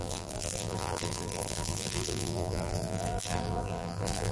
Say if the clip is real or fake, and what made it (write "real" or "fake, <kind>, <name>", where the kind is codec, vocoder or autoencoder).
fake, vocoder, BigVGAN v2